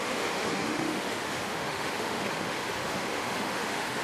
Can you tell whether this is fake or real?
fake